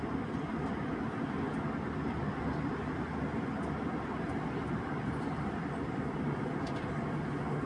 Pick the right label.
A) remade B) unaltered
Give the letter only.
B